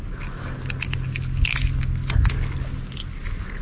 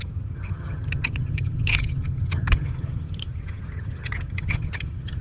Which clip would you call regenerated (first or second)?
second